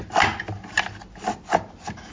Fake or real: real